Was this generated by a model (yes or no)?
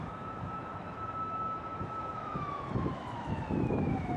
yes